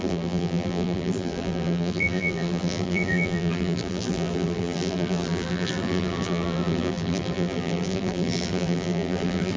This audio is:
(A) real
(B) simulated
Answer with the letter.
B